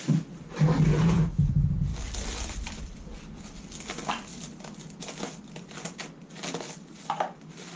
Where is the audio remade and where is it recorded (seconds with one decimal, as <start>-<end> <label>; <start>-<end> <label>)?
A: 0.0-0.9 recorded; 0.9-1.5 remade; 1.5-7.8 recorded